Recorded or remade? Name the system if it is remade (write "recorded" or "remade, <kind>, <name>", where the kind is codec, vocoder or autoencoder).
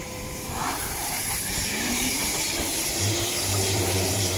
remade, vocoder, BigVGAN v2